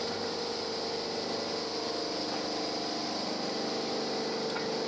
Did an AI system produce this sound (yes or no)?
no